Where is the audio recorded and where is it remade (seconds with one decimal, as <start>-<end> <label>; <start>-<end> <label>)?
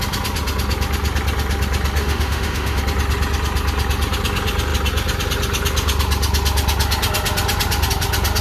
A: 0.0-2.0 recorded; 2.0-2.8 remade; 2.8-8.4 recorded